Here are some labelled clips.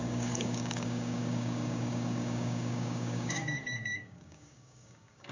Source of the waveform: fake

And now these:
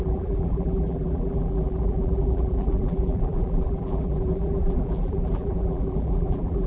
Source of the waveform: fake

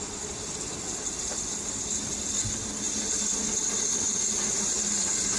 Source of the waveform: real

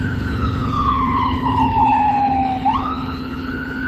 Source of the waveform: fake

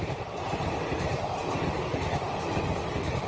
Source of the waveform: real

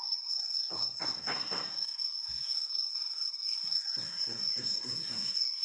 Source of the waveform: fake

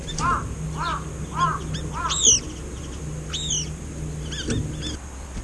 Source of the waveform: real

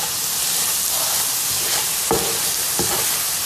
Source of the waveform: real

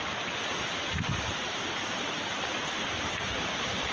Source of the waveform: fake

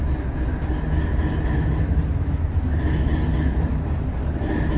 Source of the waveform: real